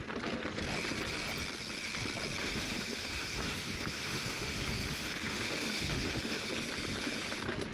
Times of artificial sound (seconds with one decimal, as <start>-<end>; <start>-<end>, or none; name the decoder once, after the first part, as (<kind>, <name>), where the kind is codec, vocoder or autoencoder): 2.4-6.5 (autoencoder, DAC-VAE)